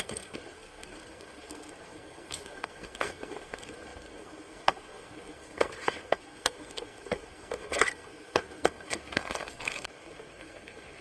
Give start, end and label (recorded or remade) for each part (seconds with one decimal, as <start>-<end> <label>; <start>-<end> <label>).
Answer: 0.0-11.0 remade